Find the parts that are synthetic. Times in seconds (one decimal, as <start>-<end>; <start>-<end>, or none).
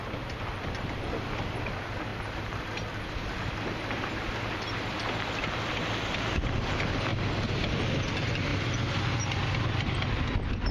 none